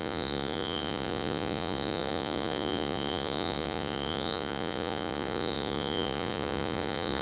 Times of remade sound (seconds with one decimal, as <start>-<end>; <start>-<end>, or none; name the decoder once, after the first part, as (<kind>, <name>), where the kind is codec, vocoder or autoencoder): 0.0-7.2 (vocoder, Vocos)